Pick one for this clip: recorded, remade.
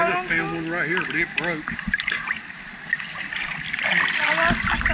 recorded